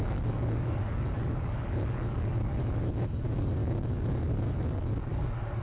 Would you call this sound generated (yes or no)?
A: yes